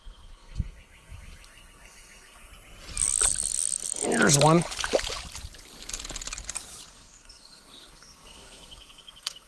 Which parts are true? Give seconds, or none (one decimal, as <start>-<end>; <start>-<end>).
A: 2.5-6.9